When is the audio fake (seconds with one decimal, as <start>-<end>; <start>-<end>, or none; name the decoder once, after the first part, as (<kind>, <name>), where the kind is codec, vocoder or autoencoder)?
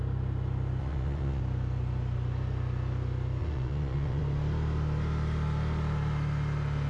0.8-1.4 (vocoder, Vocos); 3.4-4.2